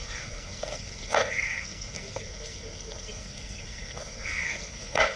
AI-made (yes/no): yes